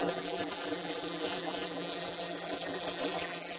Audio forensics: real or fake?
fake